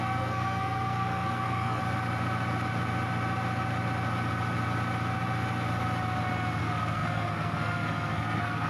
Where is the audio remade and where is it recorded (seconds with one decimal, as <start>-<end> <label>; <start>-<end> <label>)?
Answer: 0.0-1.8 remade; 1.8-6.6 recorded; 6.6-8.7 remade